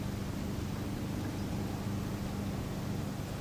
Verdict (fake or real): real